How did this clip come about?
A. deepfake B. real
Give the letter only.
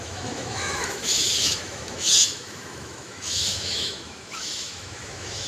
A